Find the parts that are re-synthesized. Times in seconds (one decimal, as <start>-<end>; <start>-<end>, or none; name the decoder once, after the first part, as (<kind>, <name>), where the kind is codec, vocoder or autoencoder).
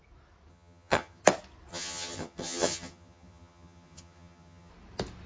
0.5-1.2 (vocoder, HiFi-GAN); 1.7-4.7